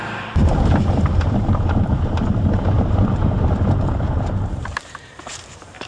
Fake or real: fake